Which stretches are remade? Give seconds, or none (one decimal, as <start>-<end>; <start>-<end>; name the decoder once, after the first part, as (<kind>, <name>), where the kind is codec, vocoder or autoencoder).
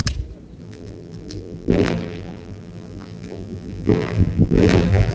0.6-5.1 (vocoder, BigVGAN v2)